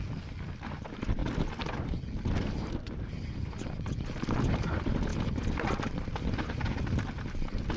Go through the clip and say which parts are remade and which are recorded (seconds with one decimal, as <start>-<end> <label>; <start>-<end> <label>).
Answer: 0.0-7.8 recorded